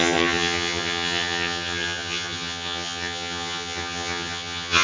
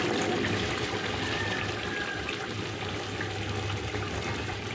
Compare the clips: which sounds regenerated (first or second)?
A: first